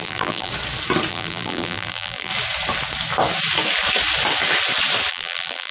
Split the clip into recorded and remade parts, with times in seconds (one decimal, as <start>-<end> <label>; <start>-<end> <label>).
0.0-0.5 remade; 0.5-1.1 recorded; 1.1-2.3 remade; 2.3-5.1 recorded; 5.1-5.7 remade